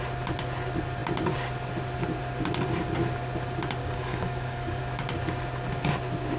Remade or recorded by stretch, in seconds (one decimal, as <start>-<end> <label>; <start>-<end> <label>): 0.0-3.8 recorded; 3.8-4.8 remade; 4.8-6.4 recorded